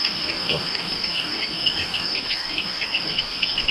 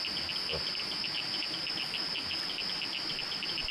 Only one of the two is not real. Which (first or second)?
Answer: first